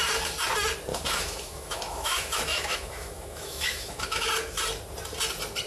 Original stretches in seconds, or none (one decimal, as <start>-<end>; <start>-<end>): 0.0-0.9; 4.3-5.7